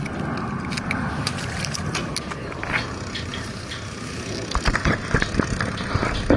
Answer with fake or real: real